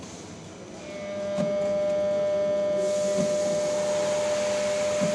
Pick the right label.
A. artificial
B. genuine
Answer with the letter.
B